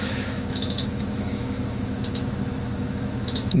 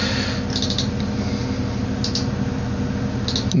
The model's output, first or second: first